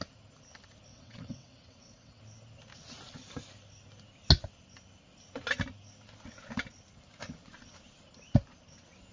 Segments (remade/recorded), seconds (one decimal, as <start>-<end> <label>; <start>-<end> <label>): 0.0-0.9 recorded; 0.9-2.2 remade; 2.2-9.1 recorded